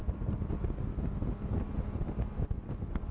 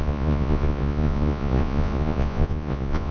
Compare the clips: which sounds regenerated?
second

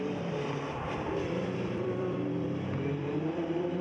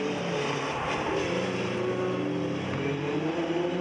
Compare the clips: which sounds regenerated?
first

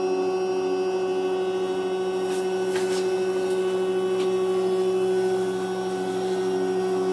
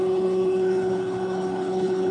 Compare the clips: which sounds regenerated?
second